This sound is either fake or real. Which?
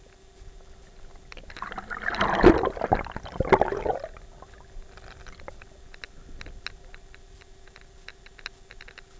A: real